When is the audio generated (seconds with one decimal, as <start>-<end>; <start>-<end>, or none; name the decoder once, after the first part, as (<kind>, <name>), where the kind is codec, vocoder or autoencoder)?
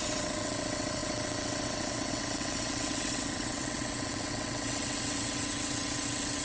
0.0-6.4 (vocoder, WaveNeXt)